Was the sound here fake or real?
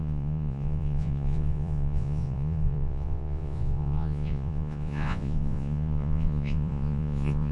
fake